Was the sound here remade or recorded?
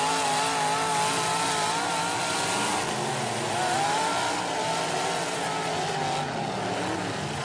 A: recorded